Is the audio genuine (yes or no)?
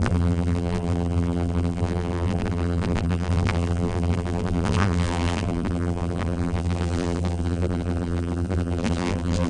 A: no